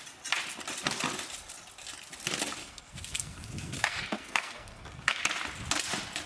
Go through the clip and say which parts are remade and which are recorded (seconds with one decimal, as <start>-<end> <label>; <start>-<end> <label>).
0.0-2.6 recorded; 2.6-5.2 remade; 5.2-6.3 recorded